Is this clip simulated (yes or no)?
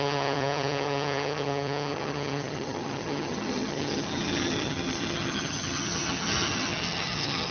yes